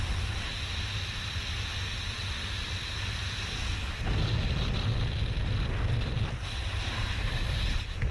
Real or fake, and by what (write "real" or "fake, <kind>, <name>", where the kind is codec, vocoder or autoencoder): real